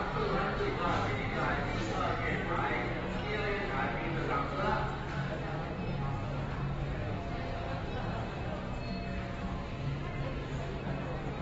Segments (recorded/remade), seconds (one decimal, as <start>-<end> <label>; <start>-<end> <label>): 0.0-11.4 recorded